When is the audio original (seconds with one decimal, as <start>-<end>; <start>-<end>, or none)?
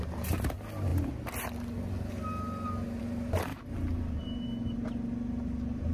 0.0-5.9